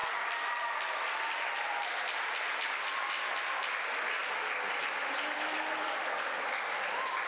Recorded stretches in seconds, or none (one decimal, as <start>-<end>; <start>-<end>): 0.0-7.3